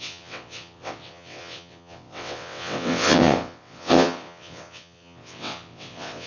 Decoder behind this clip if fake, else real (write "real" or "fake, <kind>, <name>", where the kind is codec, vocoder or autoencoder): fake, vocoder, WaveNeXt